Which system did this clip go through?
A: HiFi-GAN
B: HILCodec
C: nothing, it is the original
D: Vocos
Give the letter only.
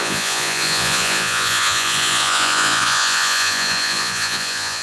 D